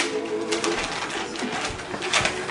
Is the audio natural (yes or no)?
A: yes